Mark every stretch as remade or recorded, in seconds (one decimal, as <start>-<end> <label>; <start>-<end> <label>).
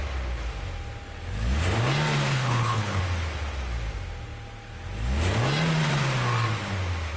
0.0-2.3 recorded; 2.3-3.0 remade; 3.0-7.2 recorded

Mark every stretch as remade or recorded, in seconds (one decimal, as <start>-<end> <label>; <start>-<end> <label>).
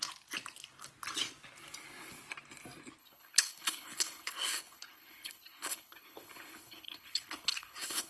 0.0-3.0 recorded; 3.0-8.1 remade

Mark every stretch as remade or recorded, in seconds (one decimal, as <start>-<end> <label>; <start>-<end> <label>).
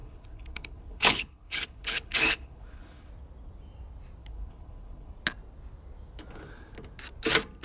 0.0-3.1 remade; 3.1-4.2 recorded; 4.2-5.1 remade; 5.1-7.6 recorded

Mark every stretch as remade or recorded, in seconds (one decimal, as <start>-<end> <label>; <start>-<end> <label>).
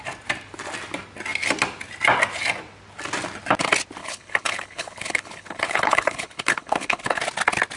0.0-4.0 recorded; 4.0-7.2 remade; 7.2-7.8 recorded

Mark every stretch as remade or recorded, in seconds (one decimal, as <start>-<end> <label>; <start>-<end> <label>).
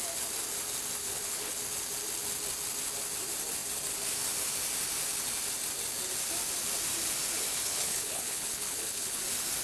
0.0-1.0 recorded; 1.0-1.6 remade; 1.6-7.5 recorded; 7.5-9.2 remade; 9.2-9.6 recorded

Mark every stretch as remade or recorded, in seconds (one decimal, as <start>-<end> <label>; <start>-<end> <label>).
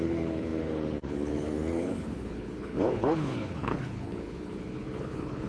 0.0-5.5 remade